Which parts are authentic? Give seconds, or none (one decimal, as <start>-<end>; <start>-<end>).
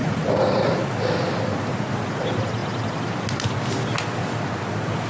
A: 0.7-5.1